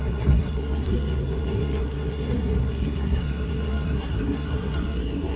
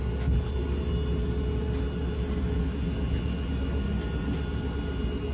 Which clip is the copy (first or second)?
first